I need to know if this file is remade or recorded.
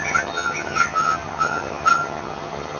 remade